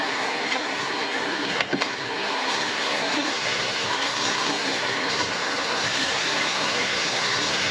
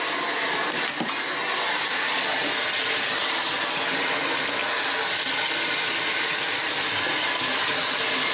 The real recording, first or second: second